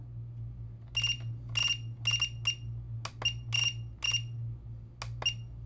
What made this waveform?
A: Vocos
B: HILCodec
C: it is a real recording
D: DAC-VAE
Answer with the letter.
C